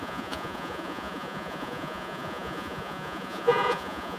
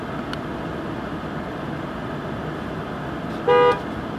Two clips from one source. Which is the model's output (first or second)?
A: first